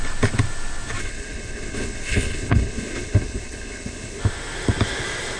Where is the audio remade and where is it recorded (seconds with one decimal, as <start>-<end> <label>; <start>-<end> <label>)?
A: 0.0-1.0 recorded; 1.0-4.2 remade; 4.2-5.4 recorded